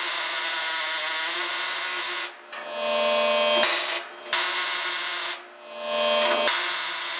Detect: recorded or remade recorded